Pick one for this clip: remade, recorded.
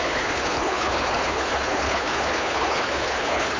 remade